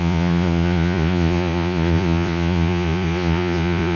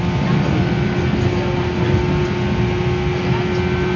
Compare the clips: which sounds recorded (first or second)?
second